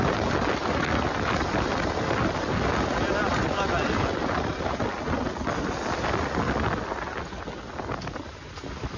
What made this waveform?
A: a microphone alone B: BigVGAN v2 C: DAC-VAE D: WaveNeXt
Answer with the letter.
A